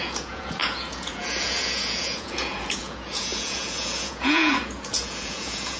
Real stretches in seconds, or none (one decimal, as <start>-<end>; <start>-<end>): none